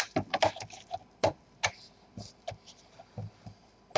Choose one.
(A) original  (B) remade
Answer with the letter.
A